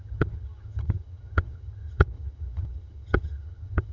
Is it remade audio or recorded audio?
remade